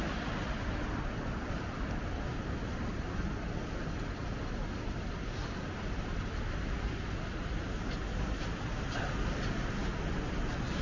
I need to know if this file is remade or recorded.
recorded